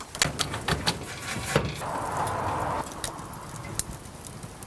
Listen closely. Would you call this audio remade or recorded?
recorded